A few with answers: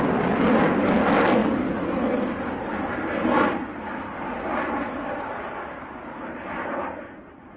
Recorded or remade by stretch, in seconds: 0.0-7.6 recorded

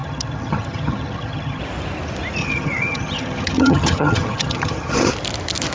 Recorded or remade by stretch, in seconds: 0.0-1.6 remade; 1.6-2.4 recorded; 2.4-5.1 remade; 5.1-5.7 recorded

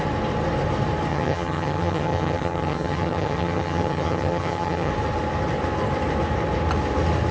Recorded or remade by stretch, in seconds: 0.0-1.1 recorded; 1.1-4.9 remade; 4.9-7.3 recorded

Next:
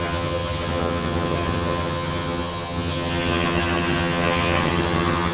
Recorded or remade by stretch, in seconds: 0.0-5.3 remade

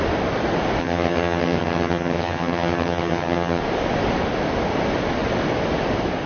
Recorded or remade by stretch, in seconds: 0.0-0.8 recorded; 0.8-3.6 remade; 3.6-6.3 recorded